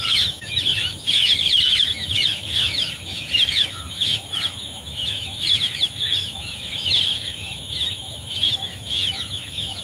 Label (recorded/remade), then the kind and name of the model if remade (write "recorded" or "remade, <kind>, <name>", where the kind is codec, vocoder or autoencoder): remade, autoencoder, DAC-VAE